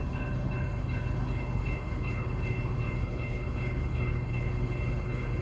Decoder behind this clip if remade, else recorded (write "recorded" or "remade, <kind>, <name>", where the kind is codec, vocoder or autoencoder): remade, codec, HILCodec